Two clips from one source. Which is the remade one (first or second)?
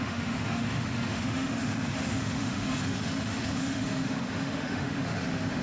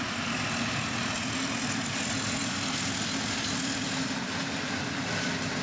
first